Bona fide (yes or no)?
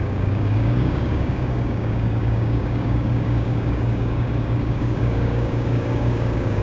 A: no